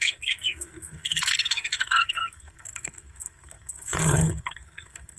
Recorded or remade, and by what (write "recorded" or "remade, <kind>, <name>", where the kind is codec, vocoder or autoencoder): remade, codec, SNAC